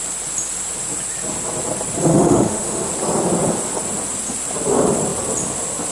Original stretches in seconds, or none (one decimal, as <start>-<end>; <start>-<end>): 0.0-2.1; 2.9-5.9